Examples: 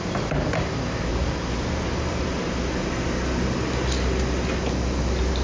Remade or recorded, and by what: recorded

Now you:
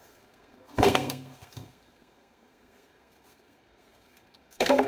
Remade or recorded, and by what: remade, codec, SNAC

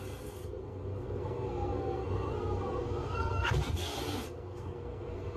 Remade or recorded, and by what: remade, codec, SNAC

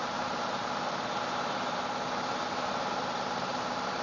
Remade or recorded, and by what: recorded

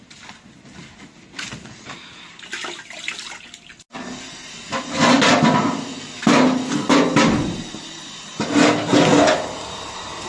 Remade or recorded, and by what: recorded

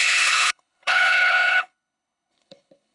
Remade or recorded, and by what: remade, codec, HILCodec